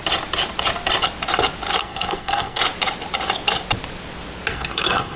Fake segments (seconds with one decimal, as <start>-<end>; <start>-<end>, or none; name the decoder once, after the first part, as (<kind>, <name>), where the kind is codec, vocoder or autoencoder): 1.8-2.6 (codec, SNAC); 4.5-5.2